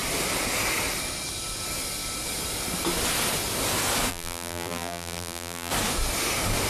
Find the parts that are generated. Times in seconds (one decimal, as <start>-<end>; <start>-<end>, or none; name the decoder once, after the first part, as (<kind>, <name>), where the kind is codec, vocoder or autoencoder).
4.1-5.7 (vocoder, BigVGAN v2)